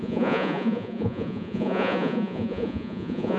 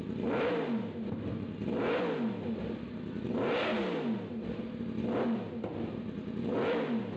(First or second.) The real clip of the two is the second